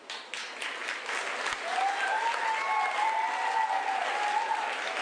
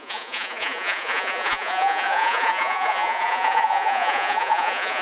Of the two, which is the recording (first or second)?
first